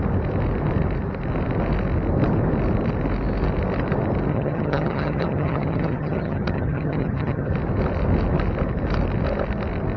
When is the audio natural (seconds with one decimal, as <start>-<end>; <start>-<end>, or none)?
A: 0.0-4.3; 7.5-10.0